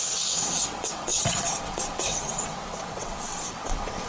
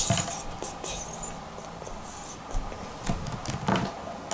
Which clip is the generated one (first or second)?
first